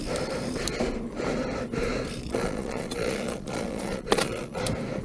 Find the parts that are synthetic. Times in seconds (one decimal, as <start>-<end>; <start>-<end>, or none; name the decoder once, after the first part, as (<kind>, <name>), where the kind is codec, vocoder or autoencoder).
2.2-4.6 (vocoder, Vocos)